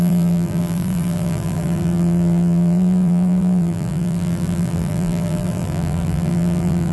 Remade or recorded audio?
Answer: remade